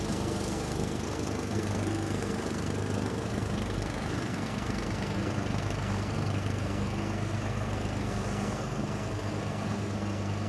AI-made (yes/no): yes